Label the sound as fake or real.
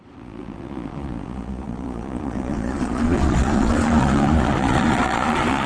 fake